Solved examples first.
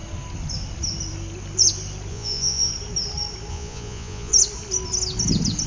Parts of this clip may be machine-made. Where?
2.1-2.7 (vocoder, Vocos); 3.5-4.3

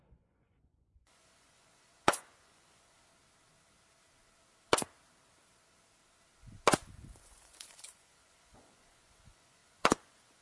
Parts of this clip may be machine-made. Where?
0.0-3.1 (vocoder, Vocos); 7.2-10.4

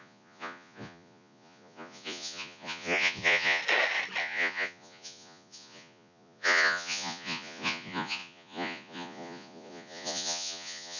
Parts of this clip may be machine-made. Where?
0.0-3.6 (vocoder, Vocos); 4.2-11.0

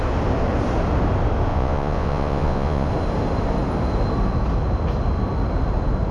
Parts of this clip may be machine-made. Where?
1.5-2.9 (vocoder, Vocos)

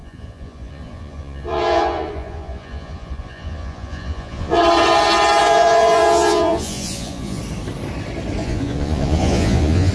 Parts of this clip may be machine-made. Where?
0.0-4.6 (vocoder, Vocos); 5.4-7.4; 8.4-9.9

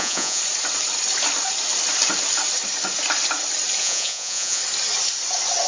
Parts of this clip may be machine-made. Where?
0.0-0.4 (vocoder, Vocos); 3.8-4.6

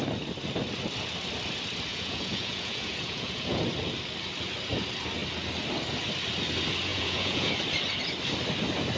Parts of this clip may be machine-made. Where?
1.9-3.6 (vocoder, Vocos); 6.9-7.5

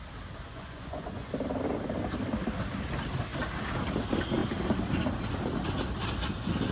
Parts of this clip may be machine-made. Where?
0.5-1.3 (vocoder, Vocos)